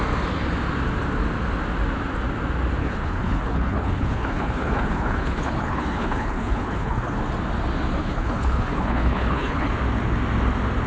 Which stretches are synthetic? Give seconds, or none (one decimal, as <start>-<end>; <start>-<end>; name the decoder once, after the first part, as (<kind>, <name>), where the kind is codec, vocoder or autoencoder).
2.8-7.2 (codec, HILCodec); 8.0-9.7